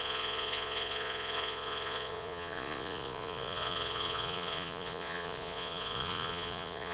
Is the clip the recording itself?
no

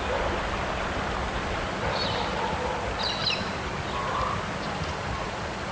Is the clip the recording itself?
yes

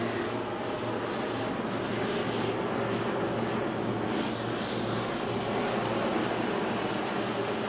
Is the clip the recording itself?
yes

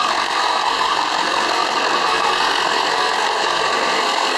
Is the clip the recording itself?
no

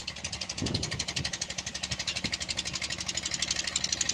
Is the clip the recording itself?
yes